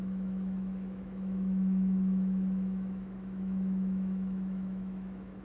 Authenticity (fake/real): fake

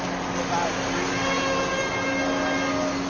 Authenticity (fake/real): real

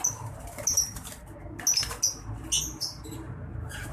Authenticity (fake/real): real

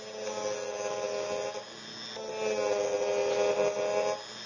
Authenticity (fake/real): real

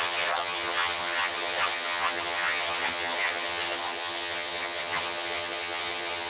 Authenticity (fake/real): fake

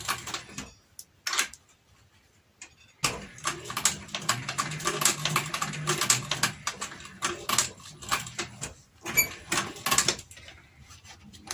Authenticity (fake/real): real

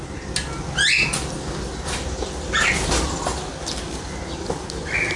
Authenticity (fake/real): real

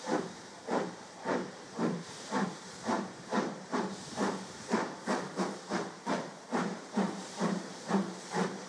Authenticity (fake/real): fake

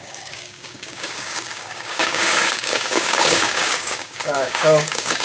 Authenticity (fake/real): fake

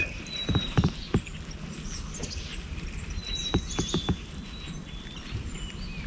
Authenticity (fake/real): real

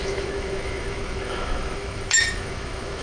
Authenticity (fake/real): fake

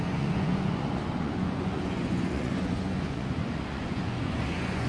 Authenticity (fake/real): fake